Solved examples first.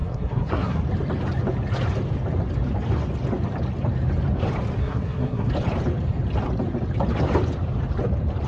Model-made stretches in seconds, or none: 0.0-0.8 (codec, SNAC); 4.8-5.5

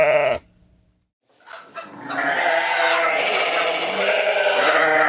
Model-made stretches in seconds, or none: none

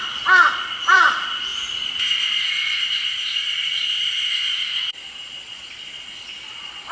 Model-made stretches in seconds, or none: 0.0-1.5 (vocoder, Vocos); 2.5-6.9

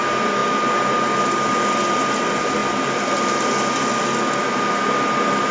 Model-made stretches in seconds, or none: none

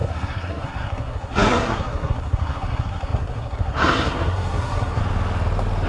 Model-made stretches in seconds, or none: 0.0-5.0 (codec, SNAC)

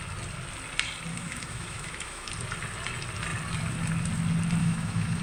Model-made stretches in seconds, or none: 1.1-2.3 (autoencoder, DAC-VAE); 4.6-5.2